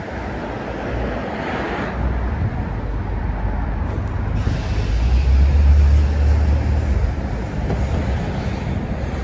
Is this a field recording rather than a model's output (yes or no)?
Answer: yes